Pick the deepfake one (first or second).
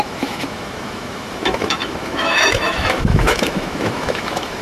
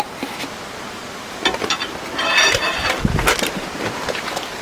first